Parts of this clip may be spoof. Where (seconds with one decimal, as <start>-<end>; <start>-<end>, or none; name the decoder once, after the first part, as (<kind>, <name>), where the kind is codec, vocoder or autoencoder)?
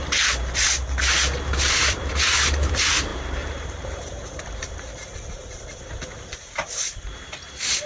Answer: 3.1-4.4 (vocoder, BigVGAN v2)